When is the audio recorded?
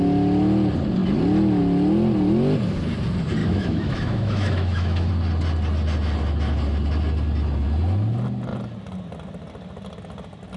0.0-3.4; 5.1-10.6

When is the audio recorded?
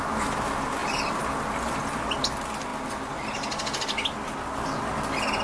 0.0-5.4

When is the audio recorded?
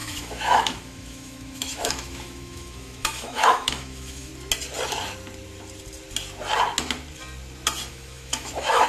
4.3-7.9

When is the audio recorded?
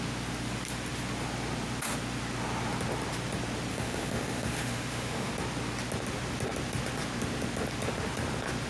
0.0-3.7; 5.3-8.7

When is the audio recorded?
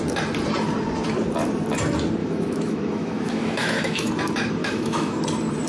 0.0-2.2; 4.1-4.6; 5.2-5.7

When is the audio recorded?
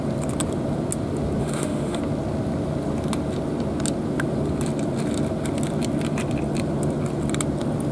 0.0-1.4; 2.0-7.9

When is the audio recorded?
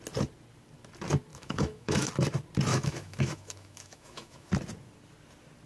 0.0-1.3; 2.1-2.7; 4.5-5.7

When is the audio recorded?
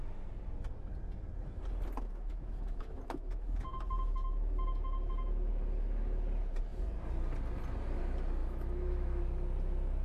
0.0-2.1; 5.5-8.4; 9.2-10.0